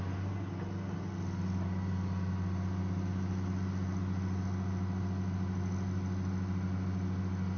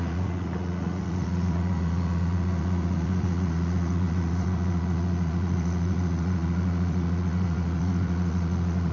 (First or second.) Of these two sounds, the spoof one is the second